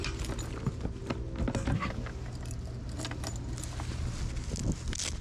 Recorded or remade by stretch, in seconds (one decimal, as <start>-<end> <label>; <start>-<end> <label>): 0.0-5.2 recorded